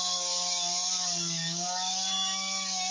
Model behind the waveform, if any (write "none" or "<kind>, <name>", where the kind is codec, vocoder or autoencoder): codec, DAC